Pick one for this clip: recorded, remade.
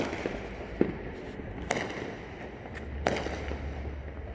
recorded